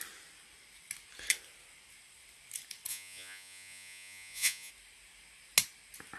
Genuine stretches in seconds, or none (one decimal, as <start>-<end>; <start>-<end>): 0.0-2.9; 4.7-6.2

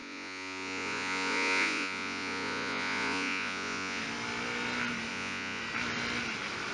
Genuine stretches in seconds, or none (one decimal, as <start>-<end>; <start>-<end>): 4.0-5.1; 5.6-6.7

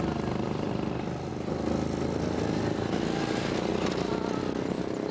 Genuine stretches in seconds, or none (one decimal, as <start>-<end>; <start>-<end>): 0.0-5.1

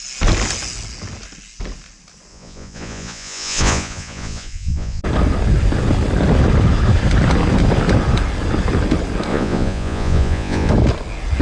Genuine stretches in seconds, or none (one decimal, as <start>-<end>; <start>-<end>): 0.0-2.3; 5.0-9.3; 10.7-11.4

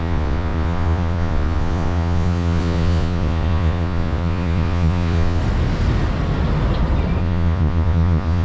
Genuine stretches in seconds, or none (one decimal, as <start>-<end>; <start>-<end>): 5.4-7.2